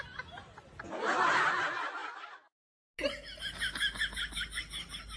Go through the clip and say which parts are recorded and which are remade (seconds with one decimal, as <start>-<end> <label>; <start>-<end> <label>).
0.0-5.2 recorded